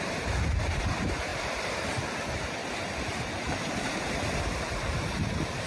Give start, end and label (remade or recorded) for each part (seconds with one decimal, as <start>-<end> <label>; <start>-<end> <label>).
0.0-5.7 remade